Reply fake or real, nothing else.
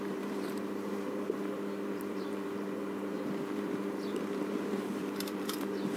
fake